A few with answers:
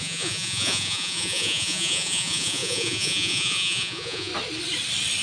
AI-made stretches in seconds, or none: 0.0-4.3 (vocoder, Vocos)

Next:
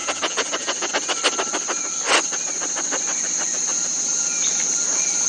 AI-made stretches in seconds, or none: 0.0-0.9 (vocoder, Vocos)

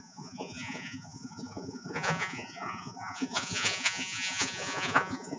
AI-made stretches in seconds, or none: 0.0-5.4 (vocoder, Vocos)